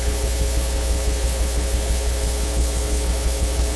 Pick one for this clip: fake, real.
fake